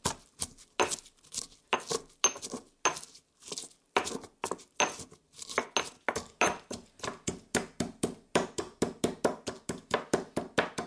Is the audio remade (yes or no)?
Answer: no